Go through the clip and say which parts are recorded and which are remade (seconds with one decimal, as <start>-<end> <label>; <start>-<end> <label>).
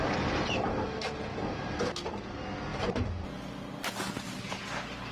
0.0-1.3 recorded; 1.3-2.2 remade; 2.2-2.7 recorded; 2.7-4.4 remade; 4.4-5.1 recorded